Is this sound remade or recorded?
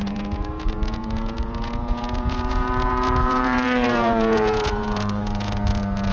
remade